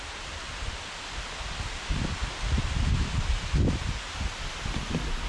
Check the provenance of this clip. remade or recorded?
recorded